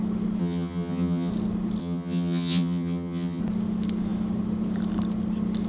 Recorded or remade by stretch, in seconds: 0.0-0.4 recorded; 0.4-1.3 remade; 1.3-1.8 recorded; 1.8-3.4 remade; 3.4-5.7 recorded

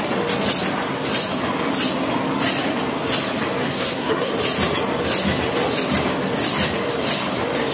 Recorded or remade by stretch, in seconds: 0.0-3.6 recorded; 3.6-4.3 remade; 4.3-7.7 recorded

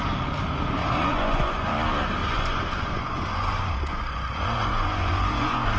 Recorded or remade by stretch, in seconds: 0.0-0.8 recorded; 0.8-1.7 remade; 1.7-2.2 recorded; 2.2-5.8 remade

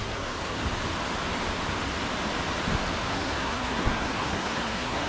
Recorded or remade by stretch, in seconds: 0.0-0.6 remade; 0.6-3.1 recorded; 3.1-5.1 remade

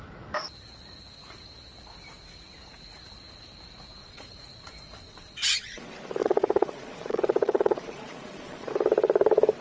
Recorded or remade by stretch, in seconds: 0.0-4.0 recorded; 4.0-5.8 remade; 5.8-6.2 recorded; 6.2-8.7 remade; 8.7-9.6 recorded

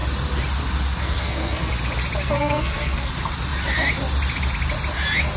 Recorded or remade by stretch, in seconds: 0.0-1.0 recorded; 1.0-1.7 remade; 1.7-2.2 recorded; 2.2-3.1 remade; 3.1-5.4 recorded

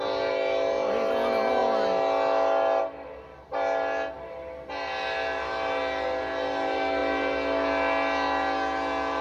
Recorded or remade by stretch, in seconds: 0.0-9.2 recorded

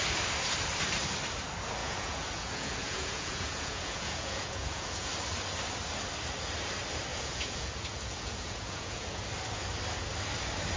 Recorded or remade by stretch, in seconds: 0.0-1.8 recorded; 1.8-5.1 remade; 5.1-7.1 recorded; 7.1-9.2 remade; 9.2-10.8 recorded